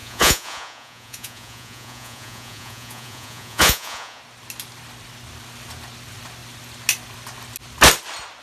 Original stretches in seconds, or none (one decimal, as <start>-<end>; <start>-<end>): 4.2-8.4